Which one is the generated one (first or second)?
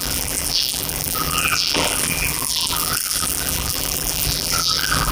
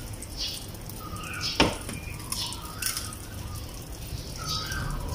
first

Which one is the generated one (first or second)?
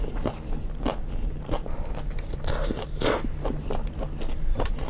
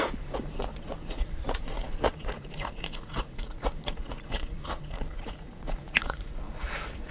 second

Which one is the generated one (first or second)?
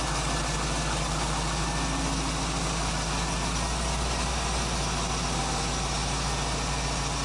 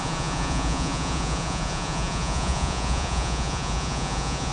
second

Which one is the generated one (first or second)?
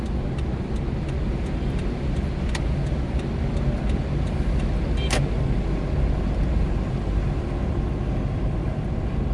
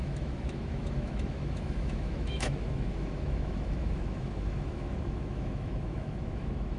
second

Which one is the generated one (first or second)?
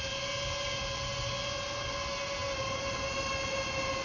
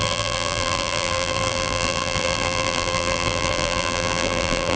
second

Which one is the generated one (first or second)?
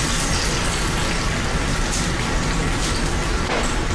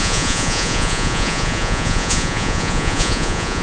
second